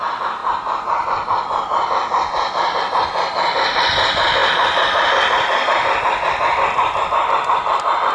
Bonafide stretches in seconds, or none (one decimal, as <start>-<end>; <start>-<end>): 0.0-8.1

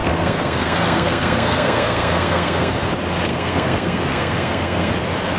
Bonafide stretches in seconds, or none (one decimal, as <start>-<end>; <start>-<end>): 2.9-3.3; 4.9-5.4

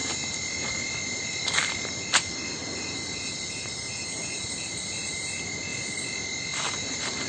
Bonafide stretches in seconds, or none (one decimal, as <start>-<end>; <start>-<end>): 0.0-7.3

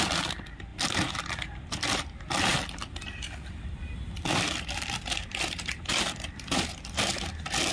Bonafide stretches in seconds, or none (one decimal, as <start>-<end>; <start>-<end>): 0.0-0.7; 2.1-2.5; 7.1-7.7